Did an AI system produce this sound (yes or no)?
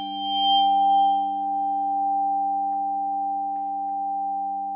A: no